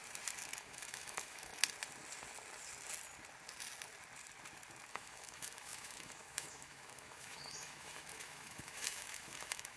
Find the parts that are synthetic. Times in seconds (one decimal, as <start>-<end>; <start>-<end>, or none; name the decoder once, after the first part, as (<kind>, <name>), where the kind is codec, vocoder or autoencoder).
0.6-1.5 (autoencoder, DAC-VAE); 4.9-9.8